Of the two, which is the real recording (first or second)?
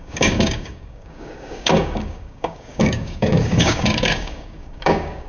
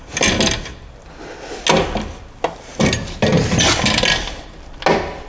second